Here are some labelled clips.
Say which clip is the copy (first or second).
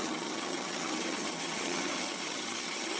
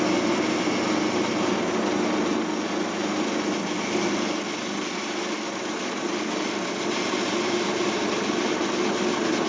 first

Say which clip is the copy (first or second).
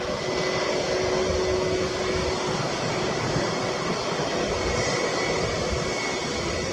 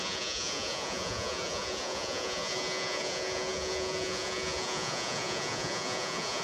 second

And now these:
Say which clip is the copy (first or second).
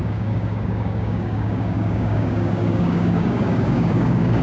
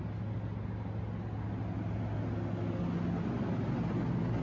first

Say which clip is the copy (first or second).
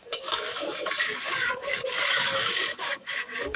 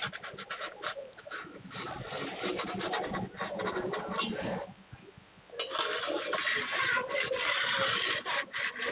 first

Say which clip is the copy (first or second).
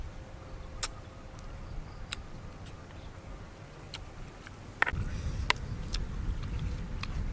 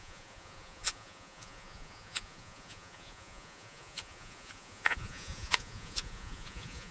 second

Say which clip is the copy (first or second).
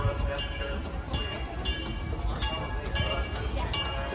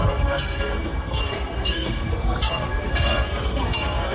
second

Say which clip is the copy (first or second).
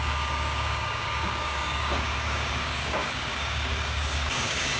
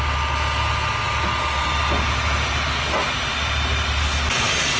first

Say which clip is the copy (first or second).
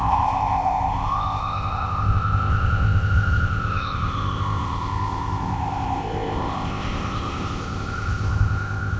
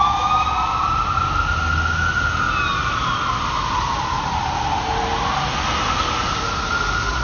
first